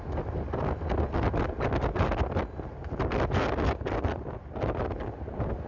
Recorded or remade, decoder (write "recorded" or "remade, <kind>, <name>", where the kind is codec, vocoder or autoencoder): recorded